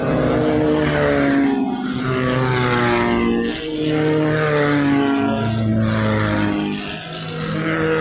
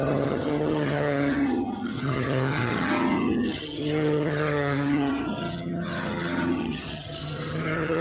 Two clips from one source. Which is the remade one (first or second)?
second